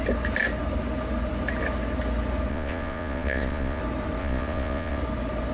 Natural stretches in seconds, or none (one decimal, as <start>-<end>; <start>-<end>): 0.0-2.5; 3.8-4.2; 5.0-5.5